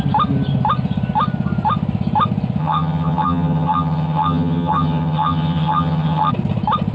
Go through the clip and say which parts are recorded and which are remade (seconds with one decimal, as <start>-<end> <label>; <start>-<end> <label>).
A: 0.0-2.6 recorded; 2.6-6.3 remade; 6.3-6.9 recorded